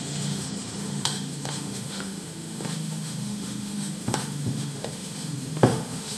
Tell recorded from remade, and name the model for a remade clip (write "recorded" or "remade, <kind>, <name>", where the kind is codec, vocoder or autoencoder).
remade, autoencoder, DAC-VAE